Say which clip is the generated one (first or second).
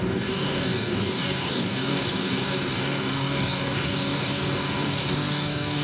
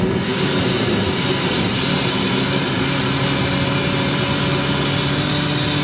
first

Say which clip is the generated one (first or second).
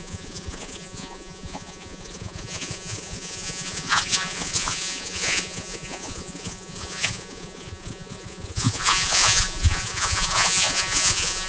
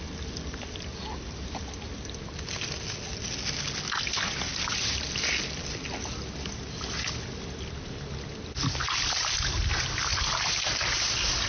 first